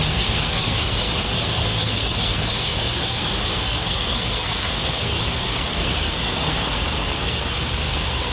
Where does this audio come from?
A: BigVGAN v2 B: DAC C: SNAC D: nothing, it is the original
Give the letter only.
C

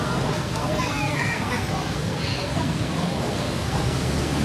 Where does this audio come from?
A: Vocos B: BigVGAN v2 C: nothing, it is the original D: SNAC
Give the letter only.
D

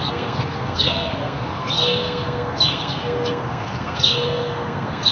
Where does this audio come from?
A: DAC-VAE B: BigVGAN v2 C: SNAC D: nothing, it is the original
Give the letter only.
C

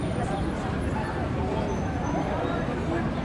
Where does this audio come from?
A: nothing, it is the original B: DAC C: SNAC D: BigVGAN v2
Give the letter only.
A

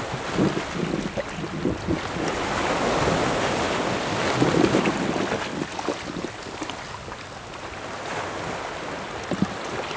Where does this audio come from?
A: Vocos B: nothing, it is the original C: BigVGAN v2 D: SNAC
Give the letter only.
B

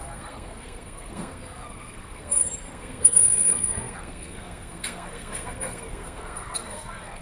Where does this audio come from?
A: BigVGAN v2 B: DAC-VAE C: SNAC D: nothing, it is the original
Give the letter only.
C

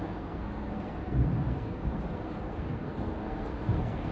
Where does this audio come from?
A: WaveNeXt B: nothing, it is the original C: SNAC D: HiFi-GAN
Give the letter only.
C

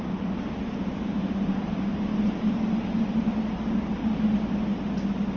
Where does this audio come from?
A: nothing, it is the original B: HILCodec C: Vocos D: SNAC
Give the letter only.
A